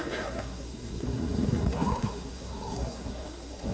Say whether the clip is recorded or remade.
remade